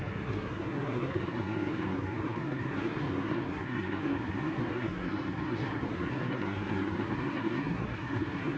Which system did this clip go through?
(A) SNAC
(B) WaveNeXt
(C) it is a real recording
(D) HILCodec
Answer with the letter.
A